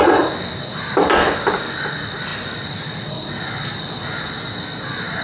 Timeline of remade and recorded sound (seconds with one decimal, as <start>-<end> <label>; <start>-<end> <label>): 0.0-0.7 recorded; 0.7-1.9 remade; 1.9-2.3 recorded; 2.3-3.1 remade; 3.1-5.2 recorded